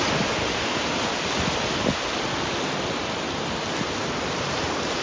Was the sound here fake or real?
real